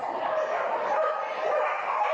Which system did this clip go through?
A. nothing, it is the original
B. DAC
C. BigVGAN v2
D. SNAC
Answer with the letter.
A